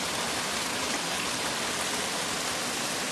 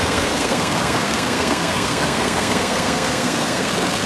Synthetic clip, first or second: second